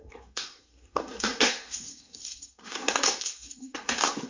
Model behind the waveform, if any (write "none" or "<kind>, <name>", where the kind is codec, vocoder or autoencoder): codec, SNAC